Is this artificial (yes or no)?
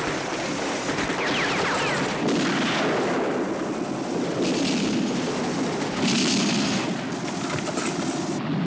no